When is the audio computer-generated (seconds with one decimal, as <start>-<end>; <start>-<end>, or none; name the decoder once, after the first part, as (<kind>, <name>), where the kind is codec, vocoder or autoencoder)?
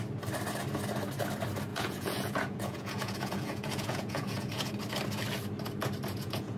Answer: 1.7-4.7 (vocoder, Vocos); 6.1-6.6